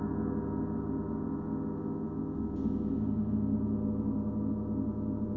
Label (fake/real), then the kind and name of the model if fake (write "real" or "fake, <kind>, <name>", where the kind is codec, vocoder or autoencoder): real